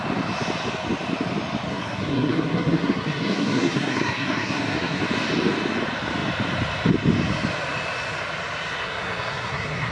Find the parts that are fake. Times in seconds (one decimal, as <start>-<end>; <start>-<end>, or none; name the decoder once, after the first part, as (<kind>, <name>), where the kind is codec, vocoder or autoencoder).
1.7-5.0 (codec, SNAC); 8.8-9.9